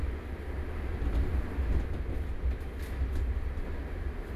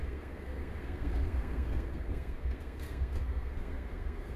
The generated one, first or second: second